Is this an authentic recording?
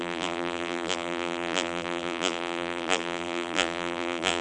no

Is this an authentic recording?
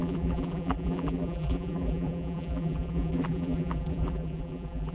no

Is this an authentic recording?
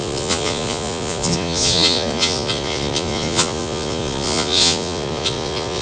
no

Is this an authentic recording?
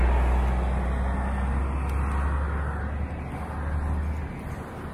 yes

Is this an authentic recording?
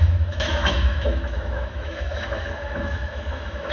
no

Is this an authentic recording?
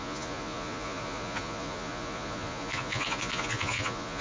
no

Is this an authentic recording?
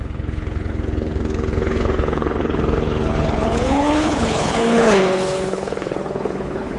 no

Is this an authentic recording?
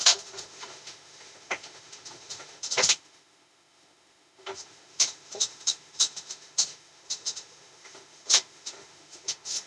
no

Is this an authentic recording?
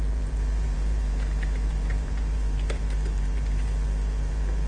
no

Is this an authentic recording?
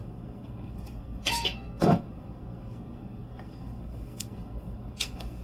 no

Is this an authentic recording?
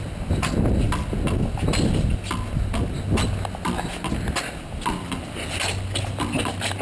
yes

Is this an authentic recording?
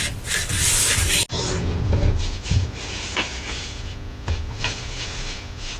yes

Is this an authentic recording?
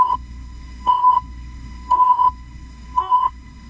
no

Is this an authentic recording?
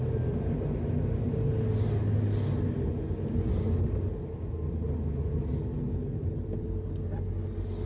yes